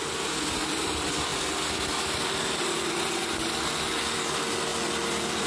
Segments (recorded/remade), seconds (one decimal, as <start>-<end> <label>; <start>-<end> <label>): 0.0-5.5 recorded